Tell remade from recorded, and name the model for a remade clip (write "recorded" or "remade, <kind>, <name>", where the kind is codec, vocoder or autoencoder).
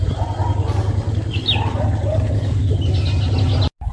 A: recorded